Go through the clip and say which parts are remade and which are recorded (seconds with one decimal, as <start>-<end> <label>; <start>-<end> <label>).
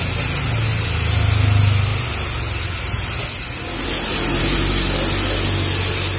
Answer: 0.0-6.2 recorded